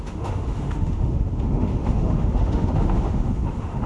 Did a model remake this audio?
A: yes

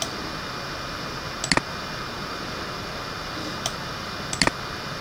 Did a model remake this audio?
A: no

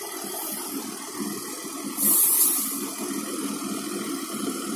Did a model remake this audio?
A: no